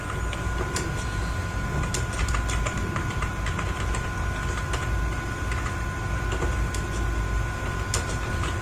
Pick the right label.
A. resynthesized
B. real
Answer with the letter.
B